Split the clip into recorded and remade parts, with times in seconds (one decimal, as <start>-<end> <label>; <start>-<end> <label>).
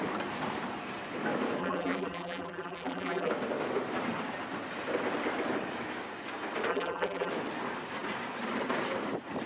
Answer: 0.0-1.6 recorded; 1.6-3.3 remade; 3.3-6.7 recorded; 6.7-7.3 remade; 7.3-9.5 recorded